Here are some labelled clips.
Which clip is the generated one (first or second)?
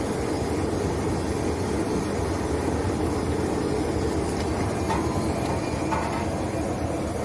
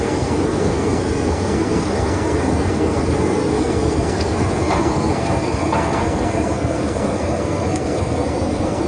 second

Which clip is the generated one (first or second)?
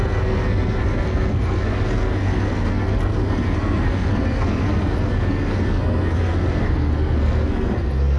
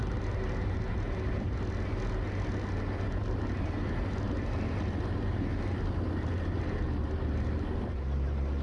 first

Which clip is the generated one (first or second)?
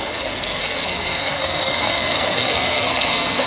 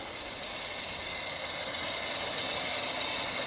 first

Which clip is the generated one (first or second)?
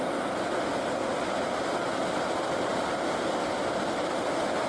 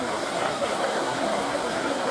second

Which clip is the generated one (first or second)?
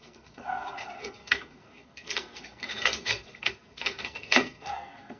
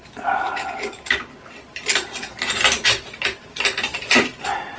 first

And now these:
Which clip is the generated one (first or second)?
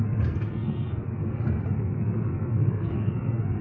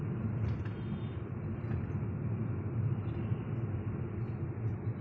first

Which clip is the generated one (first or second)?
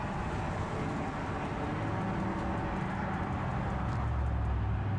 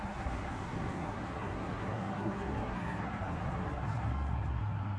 second